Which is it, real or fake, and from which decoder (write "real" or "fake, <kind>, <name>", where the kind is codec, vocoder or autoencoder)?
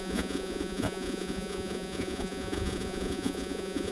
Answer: fake, vocoder, Vocos